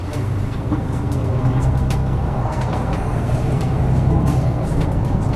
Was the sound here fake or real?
fake